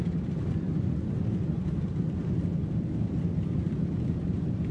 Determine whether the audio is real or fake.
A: real